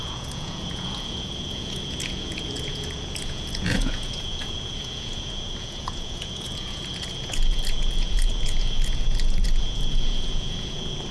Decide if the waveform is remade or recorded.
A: remade